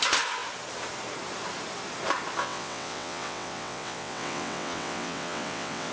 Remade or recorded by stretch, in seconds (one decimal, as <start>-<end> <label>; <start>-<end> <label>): 0.0-2.4 recorded; 2.4-5.9 remade